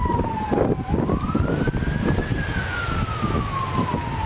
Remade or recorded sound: recorded